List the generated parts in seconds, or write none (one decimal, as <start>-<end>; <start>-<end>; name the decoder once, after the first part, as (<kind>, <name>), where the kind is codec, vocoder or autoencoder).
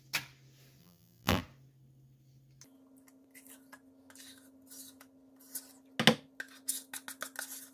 0.8-1.4 (vocoder, BigVGAN v2)